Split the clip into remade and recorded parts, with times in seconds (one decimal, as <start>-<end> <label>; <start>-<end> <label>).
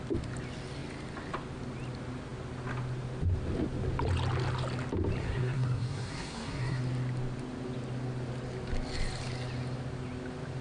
0.0-5.2 recorded; 5.2-6.8 remade; 6.8-10.6 recorded